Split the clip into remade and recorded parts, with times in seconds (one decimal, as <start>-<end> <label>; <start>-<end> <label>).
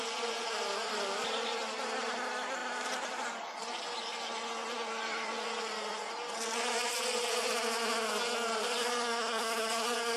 0.0-8.8 recorded; 8.8-10.2 remade